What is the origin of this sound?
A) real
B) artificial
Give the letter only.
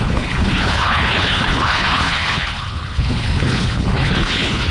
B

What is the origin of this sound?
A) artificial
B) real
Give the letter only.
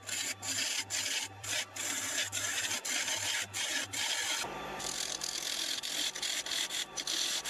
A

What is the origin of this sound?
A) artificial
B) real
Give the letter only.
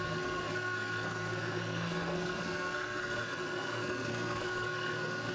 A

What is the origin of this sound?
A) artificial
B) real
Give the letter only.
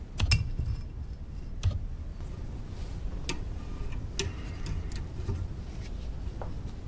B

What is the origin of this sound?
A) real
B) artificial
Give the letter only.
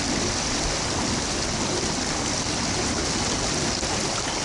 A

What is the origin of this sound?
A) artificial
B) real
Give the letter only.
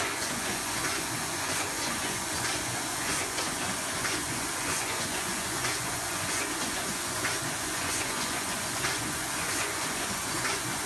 A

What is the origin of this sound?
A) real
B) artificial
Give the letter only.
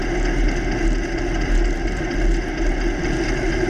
A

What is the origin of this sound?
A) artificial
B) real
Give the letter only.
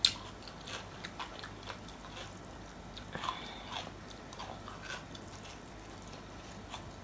B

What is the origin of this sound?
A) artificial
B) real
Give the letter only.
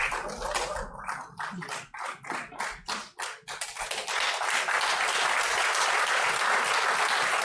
B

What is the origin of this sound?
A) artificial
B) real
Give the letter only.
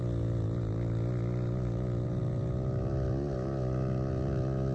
B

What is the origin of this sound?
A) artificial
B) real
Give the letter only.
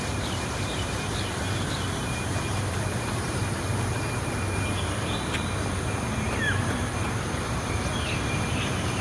A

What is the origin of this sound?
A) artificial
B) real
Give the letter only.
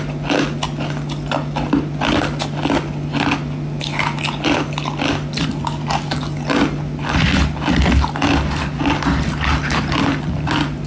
B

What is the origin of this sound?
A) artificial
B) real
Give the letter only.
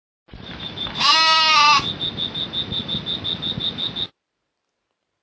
B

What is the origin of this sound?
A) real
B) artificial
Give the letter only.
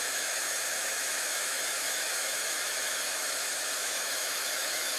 B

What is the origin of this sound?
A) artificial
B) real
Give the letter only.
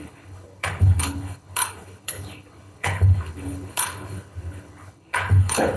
A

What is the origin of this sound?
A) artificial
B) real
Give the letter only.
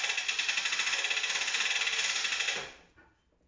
B